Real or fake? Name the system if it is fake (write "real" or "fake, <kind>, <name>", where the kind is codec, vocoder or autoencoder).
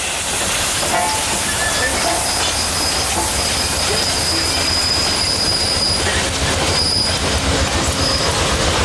real